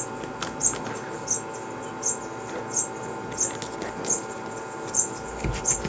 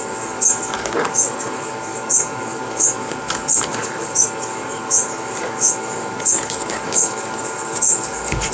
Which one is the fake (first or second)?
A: second